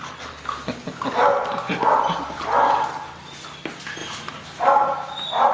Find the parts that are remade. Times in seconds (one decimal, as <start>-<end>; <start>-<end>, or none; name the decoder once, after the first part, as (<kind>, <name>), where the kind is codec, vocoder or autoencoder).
none